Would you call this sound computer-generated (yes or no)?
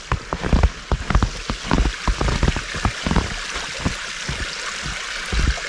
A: no